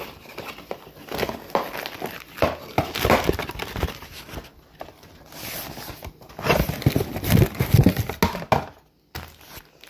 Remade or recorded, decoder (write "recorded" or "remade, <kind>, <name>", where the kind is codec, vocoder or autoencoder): recorded